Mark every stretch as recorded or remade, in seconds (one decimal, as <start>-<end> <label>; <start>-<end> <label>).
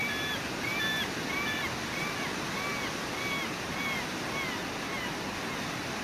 0.0-6.0 recorded